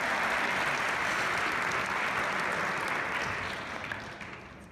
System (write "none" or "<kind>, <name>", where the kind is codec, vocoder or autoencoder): none